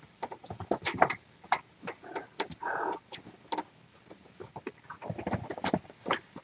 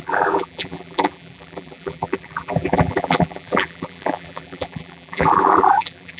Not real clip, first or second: second